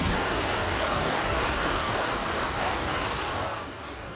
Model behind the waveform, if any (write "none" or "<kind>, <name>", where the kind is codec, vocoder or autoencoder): codec, DAC